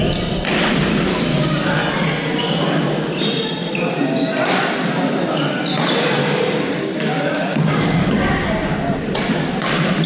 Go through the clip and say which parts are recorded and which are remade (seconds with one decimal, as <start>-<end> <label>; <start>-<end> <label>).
0.0-1.3 recorded; 1.3-1.8 remade; 1.8-6.2 recorded; 6.2-8.3 remade; 8.3-10.1 recorded